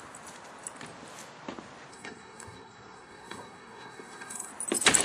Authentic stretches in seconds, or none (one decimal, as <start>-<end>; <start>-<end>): 0.0-1.9; 4.5-5.0